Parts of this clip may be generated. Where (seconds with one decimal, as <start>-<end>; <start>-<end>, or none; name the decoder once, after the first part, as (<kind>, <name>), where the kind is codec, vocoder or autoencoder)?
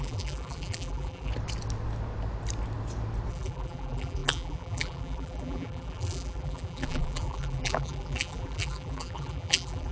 0.0-1.3 (vocoder, BigVGAN v2); 3.3-9.9